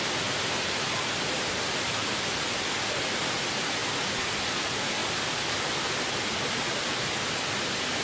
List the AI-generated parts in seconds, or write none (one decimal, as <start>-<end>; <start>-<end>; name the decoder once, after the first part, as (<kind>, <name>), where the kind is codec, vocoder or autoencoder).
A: 3.8-4.4 (vocoder, BigVGAN v2); 5.0-6.8